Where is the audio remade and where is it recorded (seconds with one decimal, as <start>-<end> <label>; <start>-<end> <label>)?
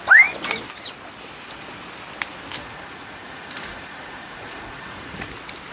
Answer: 0.0-2.6 recorded; 2.6-5.3 remade; 5.3-5.7 recorded